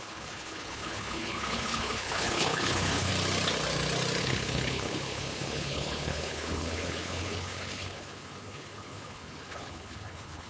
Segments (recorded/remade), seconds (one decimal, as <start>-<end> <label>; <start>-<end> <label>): 0.0-3.1 remade; 3.1-4.2 recorded; 4.2-10.5 remade